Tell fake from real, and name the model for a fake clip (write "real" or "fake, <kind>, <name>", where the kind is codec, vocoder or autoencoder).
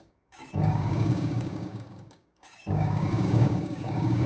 fake, codec, DAC